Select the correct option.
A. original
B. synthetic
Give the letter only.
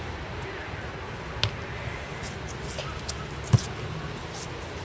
A